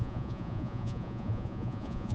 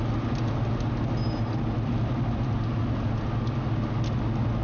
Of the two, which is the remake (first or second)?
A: first